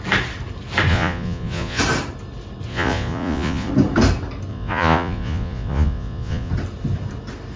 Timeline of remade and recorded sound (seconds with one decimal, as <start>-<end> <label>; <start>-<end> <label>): 0.0-0.9 recorded; 0.9-1.8 remade; 1.8-2.7 recorded; 2.7-3.7 remade; 3.7-4.5 recorded; 4.5-6.5 remade; 6.5-7.6 recorded